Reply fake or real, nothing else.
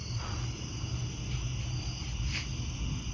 real